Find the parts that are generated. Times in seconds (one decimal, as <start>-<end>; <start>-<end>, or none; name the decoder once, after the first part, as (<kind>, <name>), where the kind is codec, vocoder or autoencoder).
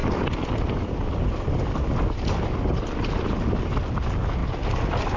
none